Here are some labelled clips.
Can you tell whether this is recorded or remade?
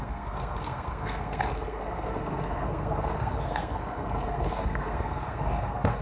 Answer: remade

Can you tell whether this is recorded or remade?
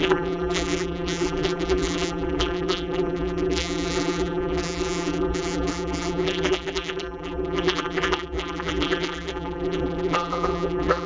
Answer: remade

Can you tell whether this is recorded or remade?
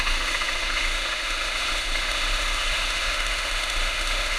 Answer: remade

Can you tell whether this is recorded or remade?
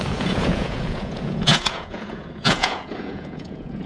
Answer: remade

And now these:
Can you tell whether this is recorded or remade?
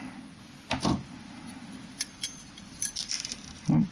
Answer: remade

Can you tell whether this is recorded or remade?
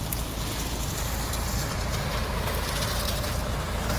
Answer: recorded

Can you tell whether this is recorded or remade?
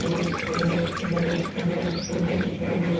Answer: recorded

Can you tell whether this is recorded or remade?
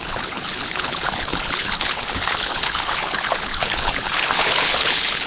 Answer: remade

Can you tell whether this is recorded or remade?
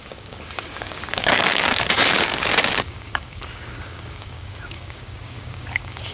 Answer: remade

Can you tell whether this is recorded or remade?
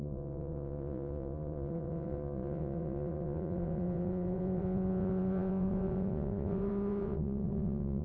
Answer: remade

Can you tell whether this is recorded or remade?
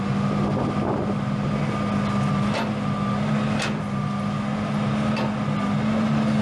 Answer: recorded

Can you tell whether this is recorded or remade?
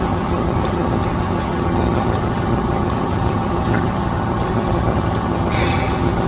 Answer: remade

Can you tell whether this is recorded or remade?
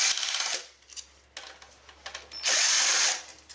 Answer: recorded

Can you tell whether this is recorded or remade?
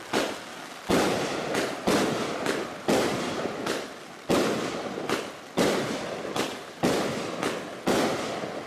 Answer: recorded